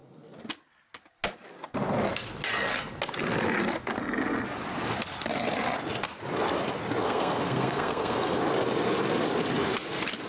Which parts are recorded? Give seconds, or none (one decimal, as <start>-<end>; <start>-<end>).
0.0-7.0; 8.4-10.3

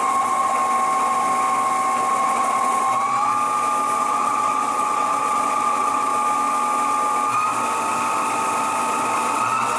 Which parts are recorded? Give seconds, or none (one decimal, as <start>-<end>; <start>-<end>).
0.6-2.1; 3.3-4.0; 6.1-9.3

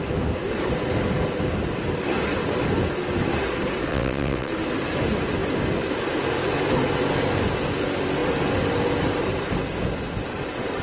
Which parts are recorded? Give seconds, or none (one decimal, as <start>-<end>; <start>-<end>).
0.0-3.9; 4.5-10.8

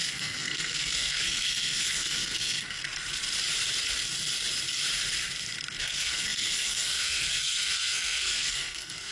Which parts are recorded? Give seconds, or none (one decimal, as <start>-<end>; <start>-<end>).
2.8-5.8

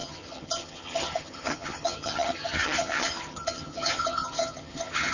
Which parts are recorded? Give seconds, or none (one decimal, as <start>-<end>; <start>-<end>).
none

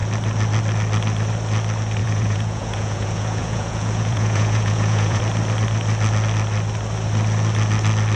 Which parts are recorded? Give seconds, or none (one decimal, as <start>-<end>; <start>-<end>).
0.0-2.0; 5.2-8.2

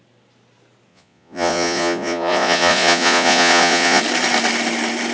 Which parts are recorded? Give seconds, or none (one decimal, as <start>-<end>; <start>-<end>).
0.0-0.9; 4.0-5.1